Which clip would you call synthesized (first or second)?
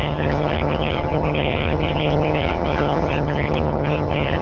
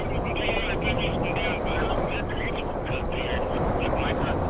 first